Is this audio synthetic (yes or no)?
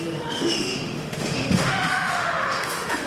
yes